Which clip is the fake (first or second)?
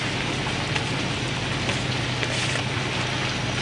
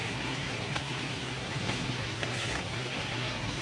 second